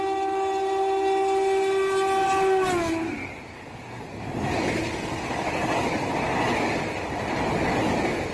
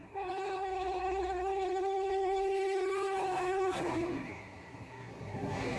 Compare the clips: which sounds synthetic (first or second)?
second